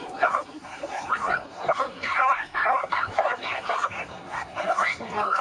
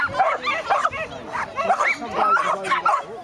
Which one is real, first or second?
second